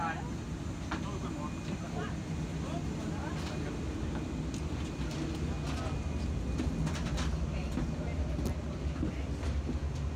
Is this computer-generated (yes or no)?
no